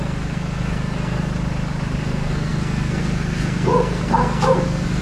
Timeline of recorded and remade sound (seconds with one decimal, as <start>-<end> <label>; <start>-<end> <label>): 0.0-1.3 remade; 1.3-2.0 recorded; 2.0-5.0 remade